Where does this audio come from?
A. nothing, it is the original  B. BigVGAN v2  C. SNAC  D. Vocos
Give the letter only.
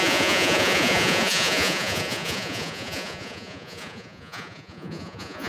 D